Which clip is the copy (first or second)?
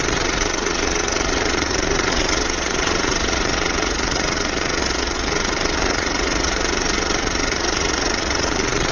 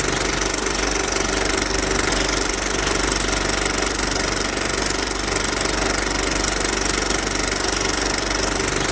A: first